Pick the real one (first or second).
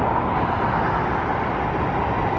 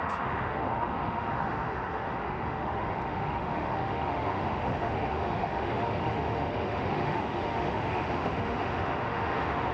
first